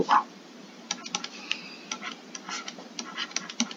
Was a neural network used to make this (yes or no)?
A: no